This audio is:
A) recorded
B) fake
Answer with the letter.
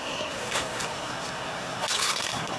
B